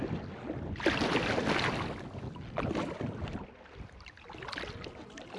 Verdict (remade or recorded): recorded